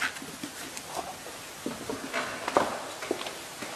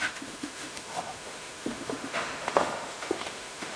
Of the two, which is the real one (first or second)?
first